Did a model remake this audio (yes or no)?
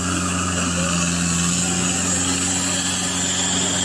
no